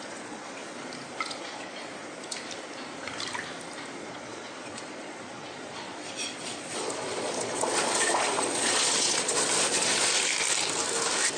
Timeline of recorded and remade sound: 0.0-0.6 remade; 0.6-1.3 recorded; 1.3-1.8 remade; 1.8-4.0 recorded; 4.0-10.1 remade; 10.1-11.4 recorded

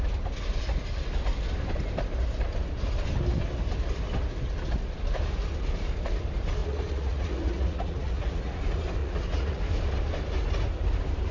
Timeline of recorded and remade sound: 0.0-6.6 recorded; 6.6-8.6 remade; 8.6-9.0 recorded; 9.0-9.6 remade; 9.6-11.3 recorded

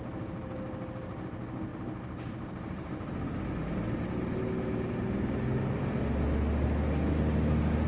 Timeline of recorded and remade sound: 0.0-7.9 recorded